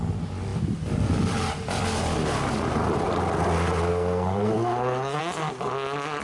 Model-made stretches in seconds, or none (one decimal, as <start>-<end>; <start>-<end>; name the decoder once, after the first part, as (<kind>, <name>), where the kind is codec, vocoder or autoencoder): 3.9-5.2 (codec, SNAC)